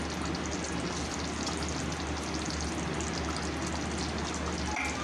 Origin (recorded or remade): recorded